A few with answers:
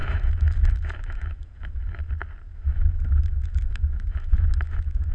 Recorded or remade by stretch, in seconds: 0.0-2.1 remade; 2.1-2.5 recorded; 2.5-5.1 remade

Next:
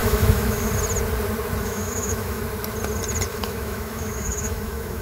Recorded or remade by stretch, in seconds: 0.0-0.7 remade; 0.7-1.6 recorded; 1.6-2.4 remade; 2.4-3.3 recorded; 3.3-5.0 remade